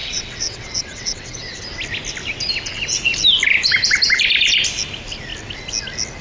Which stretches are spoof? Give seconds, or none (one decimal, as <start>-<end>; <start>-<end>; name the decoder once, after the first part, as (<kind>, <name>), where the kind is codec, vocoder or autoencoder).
0.0-1.6 (vocoder, WaveNeXt)